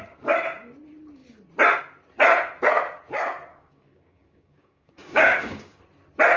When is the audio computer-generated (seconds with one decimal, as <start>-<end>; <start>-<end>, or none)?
3.5-5.8